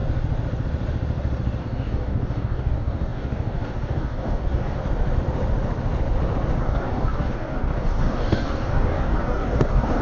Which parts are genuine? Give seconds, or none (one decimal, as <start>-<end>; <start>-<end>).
0.0-1.6; 4.8-6.6